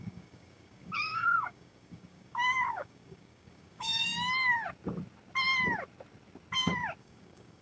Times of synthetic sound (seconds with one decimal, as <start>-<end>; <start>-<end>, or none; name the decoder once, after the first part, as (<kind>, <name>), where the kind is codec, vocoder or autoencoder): 0.0-4.1 (codec, DAC); 7.0-7.6